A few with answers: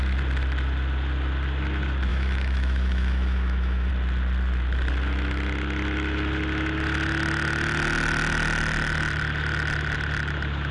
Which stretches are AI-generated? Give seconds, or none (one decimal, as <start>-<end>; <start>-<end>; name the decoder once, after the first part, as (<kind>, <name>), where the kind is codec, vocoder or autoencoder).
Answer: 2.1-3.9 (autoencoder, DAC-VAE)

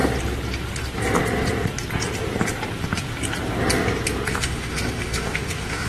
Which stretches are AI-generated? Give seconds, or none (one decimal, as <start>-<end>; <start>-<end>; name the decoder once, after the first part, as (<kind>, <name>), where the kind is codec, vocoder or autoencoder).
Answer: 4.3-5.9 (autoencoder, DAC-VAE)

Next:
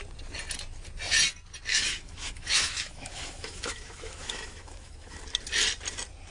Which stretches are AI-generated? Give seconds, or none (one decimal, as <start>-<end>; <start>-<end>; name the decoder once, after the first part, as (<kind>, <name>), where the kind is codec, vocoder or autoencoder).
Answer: 1.7-5.2 (autoencoder, DAC-VAE)